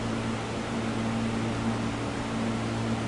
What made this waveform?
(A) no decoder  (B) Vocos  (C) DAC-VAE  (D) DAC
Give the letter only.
A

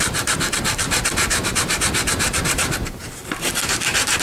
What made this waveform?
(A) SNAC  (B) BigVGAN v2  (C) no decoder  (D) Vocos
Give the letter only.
B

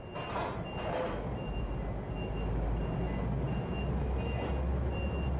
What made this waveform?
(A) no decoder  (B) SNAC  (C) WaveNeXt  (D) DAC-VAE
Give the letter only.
A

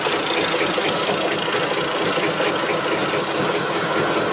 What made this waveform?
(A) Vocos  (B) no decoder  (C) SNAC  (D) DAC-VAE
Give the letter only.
B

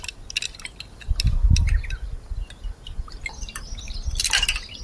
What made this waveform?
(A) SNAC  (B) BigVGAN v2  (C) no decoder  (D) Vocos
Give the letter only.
C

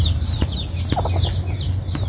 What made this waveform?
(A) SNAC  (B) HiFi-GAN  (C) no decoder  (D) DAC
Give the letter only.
C